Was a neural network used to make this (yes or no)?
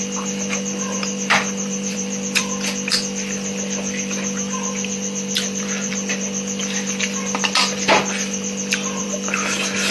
yes